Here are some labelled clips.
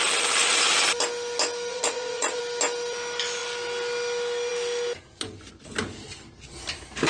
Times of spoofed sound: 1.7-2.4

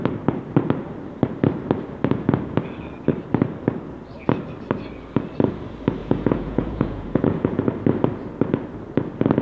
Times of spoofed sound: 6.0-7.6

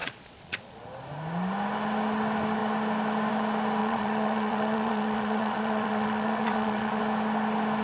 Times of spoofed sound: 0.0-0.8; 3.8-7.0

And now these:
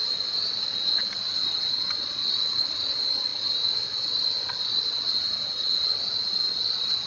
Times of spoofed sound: 1.2-3.3; 4.4-7.1